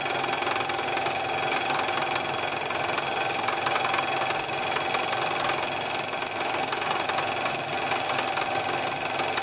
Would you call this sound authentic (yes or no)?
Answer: yes